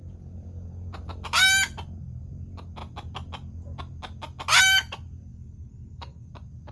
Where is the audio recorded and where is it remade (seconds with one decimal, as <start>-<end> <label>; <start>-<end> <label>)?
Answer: 0.0-5.3 recorded; 5.3-6.3 remade; 6.3-6.7 recorded